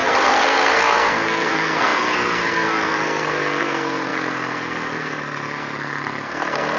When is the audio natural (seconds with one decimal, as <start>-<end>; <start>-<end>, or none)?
none